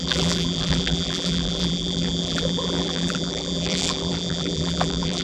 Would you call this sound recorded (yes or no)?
no